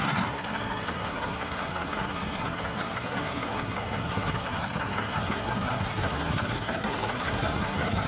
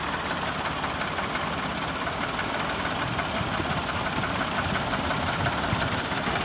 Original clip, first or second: second